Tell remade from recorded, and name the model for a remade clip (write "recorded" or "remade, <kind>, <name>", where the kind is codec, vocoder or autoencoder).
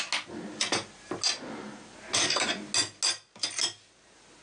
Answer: recorded